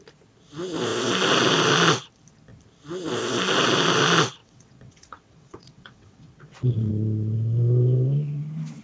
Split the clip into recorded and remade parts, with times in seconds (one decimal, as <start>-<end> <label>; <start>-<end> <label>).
0.0-4.4 recorded; 4.4-6.9 remade; 6.9-8.8 recorded